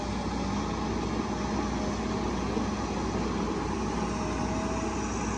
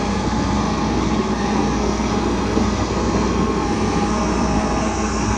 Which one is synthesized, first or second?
second